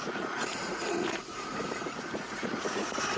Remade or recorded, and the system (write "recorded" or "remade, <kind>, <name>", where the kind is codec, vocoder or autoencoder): remade, vocoder, Vocos